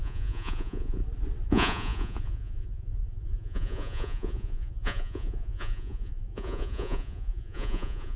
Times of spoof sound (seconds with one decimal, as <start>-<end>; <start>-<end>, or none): 0.0-1.0; 1.5-8.2